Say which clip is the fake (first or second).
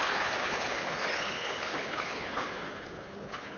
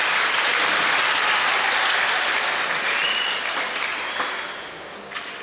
first